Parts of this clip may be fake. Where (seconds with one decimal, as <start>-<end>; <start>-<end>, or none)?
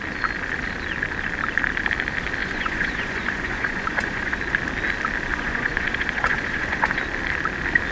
2.4-4.4; 5.3-7.0